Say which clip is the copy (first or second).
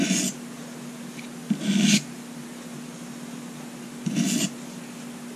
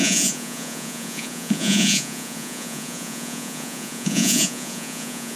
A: second